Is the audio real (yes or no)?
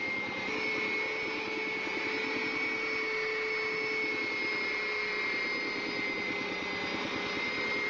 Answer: yes